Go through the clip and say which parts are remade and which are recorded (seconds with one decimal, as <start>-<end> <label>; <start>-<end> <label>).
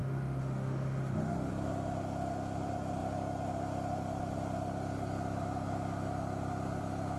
0.0-1.5 remade; 1.5-7.2 recorded